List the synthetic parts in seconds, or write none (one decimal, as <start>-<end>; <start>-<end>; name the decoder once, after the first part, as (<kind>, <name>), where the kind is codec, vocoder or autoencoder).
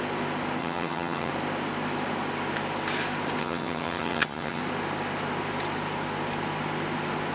0.6-1.3 (vocoder, HiFi-GAN); 3.4-4.6